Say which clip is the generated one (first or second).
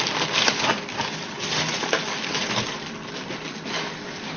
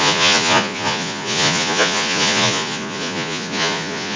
second